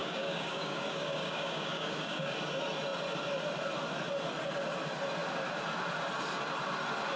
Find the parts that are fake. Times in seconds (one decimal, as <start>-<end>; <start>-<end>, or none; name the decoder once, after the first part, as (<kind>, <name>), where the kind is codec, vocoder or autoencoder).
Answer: 0.0-2.3 (codec, DAC)